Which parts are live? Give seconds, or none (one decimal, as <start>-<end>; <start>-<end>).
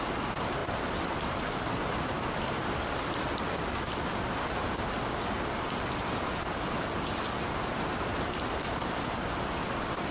0.0-10.1